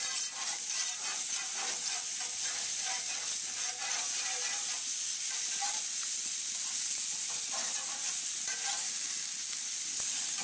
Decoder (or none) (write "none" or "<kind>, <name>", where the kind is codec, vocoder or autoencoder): none